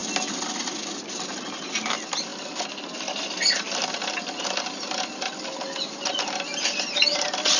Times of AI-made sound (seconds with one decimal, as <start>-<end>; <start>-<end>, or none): none